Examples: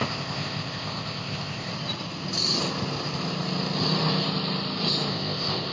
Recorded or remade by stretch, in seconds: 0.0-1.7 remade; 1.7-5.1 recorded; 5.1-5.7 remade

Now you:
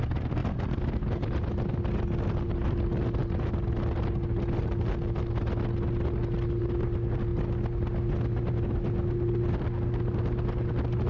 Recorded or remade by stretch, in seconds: 0.0-11.1 recorded